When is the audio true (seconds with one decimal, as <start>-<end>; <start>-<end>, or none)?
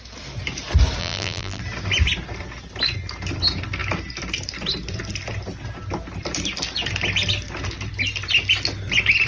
0.0-1.0; 1.6-9.3